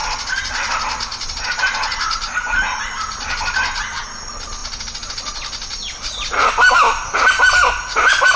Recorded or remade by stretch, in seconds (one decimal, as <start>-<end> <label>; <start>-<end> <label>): 0.0-8.4 recorded